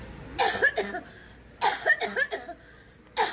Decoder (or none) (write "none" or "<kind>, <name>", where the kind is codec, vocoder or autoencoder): none